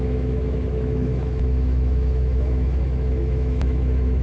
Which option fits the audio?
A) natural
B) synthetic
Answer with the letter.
B